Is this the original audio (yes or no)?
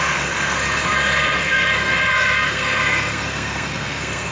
no